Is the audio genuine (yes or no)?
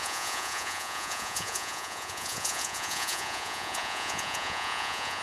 no